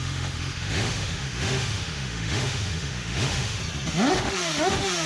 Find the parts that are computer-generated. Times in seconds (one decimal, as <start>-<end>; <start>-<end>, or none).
0.0-3.6; 4.1-5.1